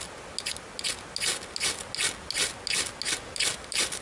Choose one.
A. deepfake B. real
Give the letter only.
B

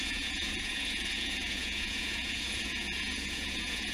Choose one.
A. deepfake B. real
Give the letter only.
A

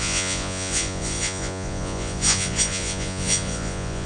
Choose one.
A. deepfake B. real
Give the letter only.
A